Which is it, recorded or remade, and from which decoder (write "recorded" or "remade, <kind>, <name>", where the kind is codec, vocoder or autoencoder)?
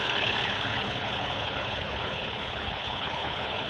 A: remade, codec, HILCodec